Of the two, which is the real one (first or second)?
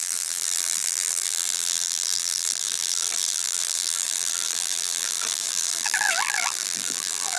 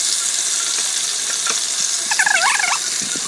second